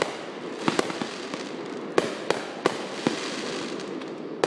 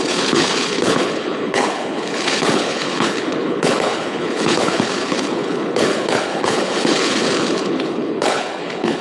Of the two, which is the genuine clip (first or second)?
first